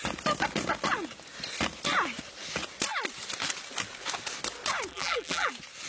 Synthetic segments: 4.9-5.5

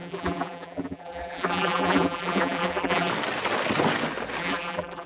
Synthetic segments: 0.0-3.1; 4.4-5.1

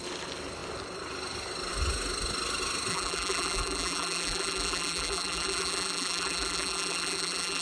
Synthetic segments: 2.9-7.6

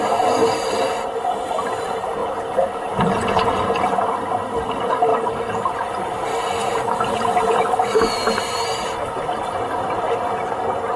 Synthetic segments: 2.2-3.9; 5.1-5.7; 6.3-6.8

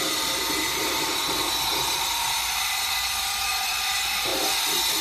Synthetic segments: 0.0-5.0

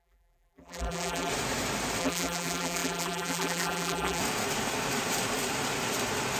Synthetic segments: 0.0-1.3; 2.0-4.2